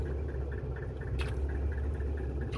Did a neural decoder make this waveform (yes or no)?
no